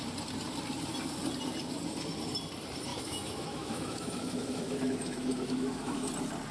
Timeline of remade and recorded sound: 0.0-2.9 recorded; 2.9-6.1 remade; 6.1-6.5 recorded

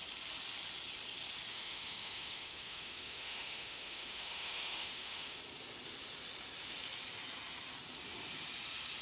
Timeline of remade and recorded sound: 0.0-1.5 recorded; 1.5-5.4 remade; 5.4-9.0 recorded

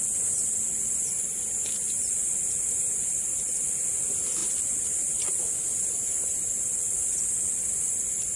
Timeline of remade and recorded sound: 0.0-8.4 recorded

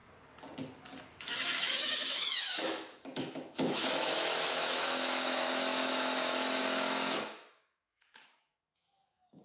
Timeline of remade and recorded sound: 0.0-1.0 recorded; 1.0-9.4 remade

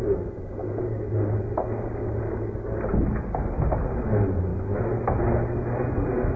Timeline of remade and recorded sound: 0.0-6.4 recorded

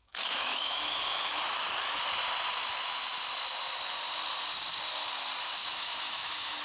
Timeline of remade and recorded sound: 0.0-1.4 remade; 1.4-5.6 recorded; 5.6-6.6 remade

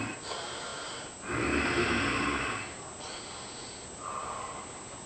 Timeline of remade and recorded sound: 0.0-5.1 recorded